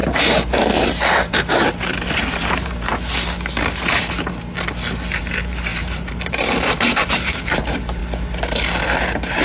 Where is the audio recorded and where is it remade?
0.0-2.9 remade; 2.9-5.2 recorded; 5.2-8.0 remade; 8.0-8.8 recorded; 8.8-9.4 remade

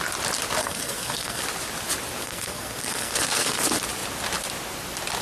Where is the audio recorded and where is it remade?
0.0-0.6 recorded; 0.6-1.4 remade; 1.4-2.2 recorded; 2.2-3.6 remade; 3.6-5.2 recorded

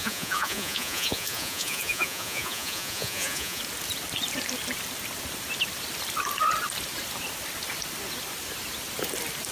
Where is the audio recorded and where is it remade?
0.0-3.6 remade; 3.6-9.5 recorded

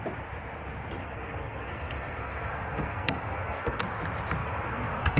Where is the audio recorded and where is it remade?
0.0-1.0 recorded; 1.0-3.8 remade; 3.8-4.4 recorded; 4.4-5.2 remade